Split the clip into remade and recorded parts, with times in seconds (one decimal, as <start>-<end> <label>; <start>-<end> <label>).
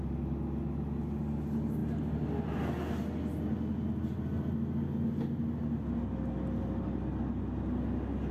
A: 0.0-8.3 recorded